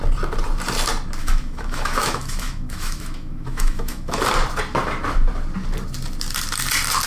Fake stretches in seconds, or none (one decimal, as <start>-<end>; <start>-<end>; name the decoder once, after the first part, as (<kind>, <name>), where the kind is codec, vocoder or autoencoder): 1.2-4.2 (autoencoder, DAC-VAE)